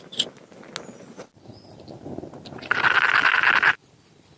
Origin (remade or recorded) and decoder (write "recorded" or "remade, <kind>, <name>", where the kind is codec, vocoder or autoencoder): recorded